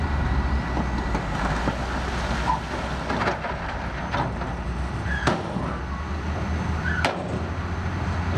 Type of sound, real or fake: real